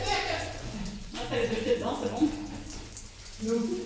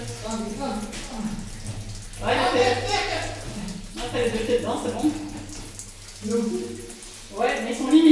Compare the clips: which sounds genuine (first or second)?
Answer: second